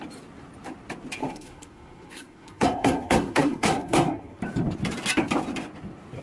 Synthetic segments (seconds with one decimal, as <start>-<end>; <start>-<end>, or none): 1.2-4.4